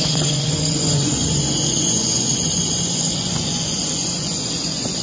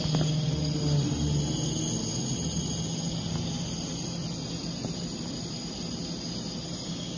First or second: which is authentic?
second